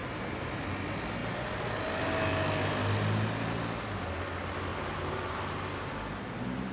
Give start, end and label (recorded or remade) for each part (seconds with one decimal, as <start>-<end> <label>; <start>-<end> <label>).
0.0-0.6 remade; 0.6-4.7 recorded; 4.7-5.9 remade; 5.9-6.7 recorded